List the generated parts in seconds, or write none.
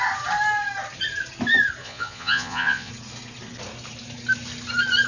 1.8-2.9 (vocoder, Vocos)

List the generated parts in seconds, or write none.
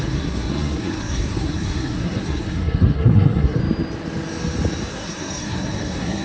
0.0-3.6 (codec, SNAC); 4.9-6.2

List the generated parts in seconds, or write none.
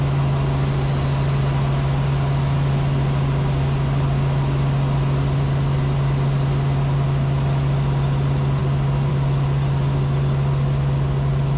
none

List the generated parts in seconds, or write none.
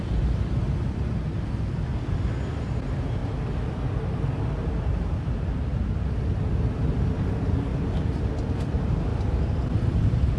7.7-8.3 (vocoder, BigVGAN v2)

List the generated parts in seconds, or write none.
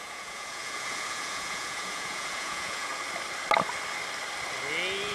0.0-2.9 (vocoder, Vocos)